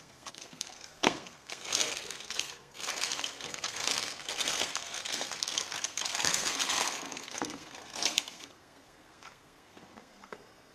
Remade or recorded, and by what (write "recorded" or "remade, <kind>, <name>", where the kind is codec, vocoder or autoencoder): remade, codec, SNAC